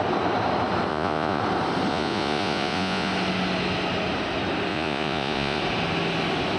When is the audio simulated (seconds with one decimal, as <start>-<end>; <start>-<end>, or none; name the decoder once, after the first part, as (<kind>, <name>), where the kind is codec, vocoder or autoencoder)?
0.9-1.4 (vocoder, Vocos); 1.9-3.1; 4.7-5.6